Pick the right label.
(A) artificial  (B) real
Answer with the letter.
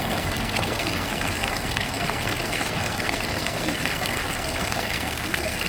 A